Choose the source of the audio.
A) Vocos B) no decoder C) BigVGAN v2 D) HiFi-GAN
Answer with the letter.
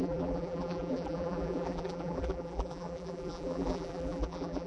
C